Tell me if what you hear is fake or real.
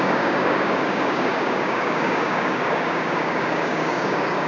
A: fake